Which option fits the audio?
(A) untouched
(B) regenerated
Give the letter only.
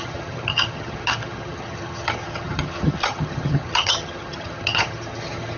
B